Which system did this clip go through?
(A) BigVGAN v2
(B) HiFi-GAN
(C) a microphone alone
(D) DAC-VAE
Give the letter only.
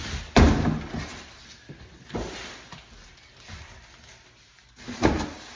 C